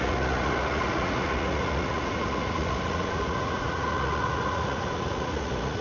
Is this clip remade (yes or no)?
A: yes